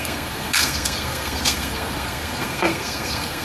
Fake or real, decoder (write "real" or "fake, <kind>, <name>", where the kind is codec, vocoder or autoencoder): fake, codec, SNAC